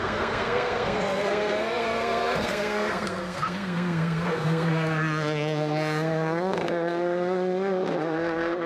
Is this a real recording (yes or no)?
no